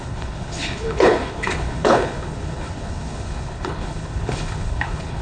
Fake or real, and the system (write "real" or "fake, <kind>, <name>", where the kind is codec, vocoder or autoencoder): fake, codec, HILCodec